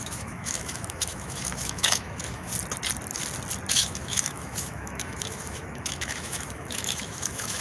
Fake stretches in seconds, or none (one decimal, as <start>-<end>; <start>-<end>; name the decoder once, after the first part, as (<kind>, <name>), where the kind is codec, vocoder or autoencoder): 0.0-2.5 (autoencoder, DAC-VAE); 3.7-7.6